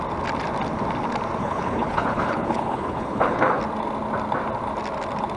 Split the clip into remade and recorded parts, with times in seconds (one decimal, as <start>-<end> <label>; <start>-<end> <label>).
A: 0.0-1.4 recorded; 1.4-3.6 remade; 3.6-5.4 recorded